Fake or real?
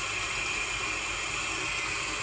real